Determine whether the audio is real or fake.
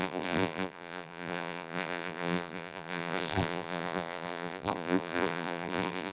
fake